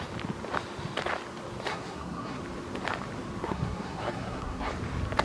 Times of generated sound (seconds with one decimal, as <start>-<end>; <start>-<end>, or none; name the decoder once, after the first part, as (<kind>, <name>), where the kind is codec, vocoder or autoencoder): 1.7-2.4 (codec, SNAC); 3.4-4.7